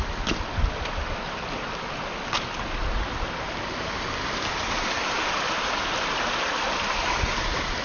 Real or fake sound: real